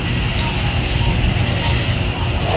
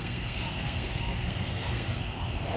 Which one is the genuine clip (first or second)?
first